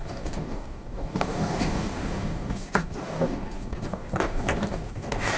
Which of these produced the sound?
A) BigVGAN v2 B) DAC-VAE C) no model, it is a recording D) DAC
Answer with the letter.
D